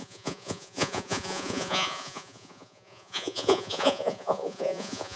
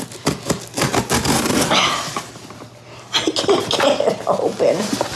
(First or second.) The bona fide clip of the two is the second